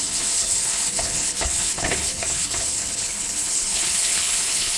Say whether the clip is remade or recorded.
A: remade